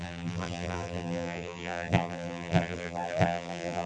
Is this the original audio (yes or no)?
no